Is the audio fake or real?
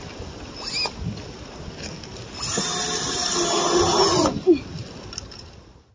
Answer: real